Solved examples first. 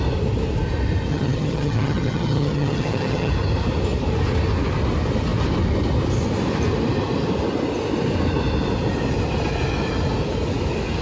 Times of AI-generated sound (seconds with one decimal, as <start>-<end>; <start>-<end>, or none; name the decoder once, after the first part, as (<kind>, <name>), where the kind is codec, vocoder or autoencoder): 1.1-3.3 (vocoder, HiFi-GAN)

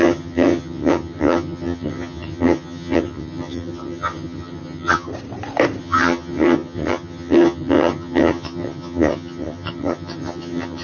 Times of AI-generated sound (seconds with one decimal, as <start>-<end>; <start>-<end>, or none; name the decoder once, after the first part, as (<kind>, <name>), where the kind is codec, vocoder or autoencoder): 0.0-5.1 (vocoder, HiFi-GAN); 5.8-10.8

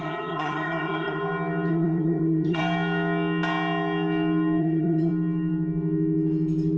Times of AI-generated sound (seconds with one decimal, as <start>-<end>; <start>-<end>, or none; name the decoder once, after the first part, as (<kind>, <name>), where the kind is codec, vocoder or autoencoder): 0.0-1.2 (vocoder, HiFi-GAN); 1.7-2.6; 4.6-5.1

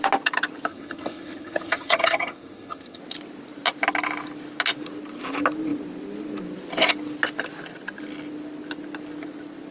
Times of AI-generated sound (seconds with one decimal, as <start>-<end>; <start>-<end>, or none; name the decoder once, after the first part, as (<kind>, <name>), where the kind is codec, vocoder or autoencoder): 0.7-3.0 (vocoder, HiFi-GAN)

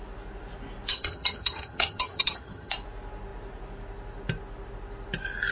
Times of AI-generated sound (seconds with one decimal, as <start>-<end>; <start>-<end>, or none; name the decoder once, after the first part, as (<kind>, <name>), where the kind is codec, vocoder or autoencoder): 0.9-2.7 (vocoder, HiFi-GAN)

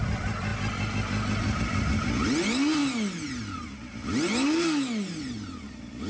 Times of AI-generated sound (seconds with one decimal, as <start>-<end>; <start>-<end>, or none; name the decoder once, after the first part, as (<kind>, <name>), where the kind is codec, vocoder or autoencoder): none

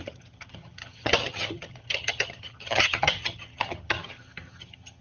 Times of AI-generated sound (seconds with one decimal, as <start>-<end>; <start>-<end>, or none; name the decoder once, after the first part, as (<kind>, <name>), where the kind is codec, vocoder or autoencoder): 0.0-5.0 (vocoder, HiFi-GAN)

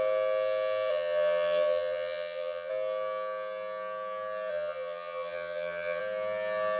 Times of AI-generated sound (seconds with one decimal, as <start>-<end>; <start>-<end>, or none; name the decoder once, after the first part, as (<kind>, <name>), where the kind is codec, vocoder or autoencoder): 0.9-2.7 (vocoder, HiFi-GAN); 4.5-6.0